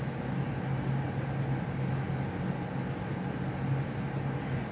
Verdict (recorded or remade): recorded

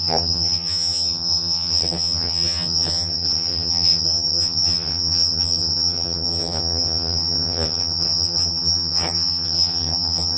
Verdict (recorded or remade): remade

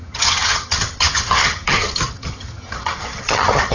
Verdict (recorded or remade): remade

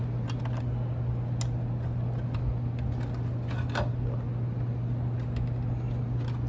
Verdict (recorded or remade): recorded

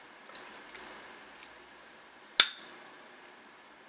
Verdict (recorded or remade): recorded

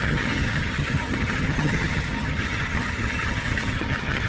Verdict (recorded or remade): remade